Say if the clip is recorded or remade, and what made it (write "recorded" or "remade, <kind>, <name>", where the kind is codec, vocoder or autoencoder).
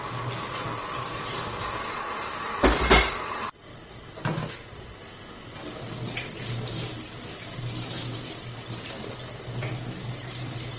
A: recorded